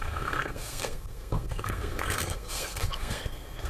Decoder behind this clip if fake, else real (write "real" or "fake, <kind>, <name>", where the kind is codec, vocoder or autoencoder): fake, codec, SNAC